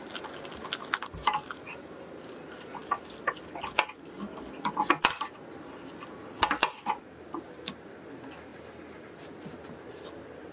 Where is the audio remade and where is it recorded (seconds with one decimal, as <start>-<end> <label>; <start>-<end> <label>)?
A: 0.0-8.5 recorded; 8.5-10.1 remade; 10.1-10.5 recorded